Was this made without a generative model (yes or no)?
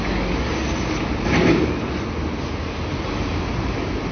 yes